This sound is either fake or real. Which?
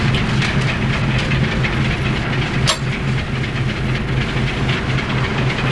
real